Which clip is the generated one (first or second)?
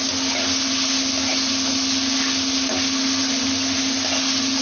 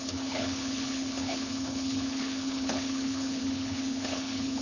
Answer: second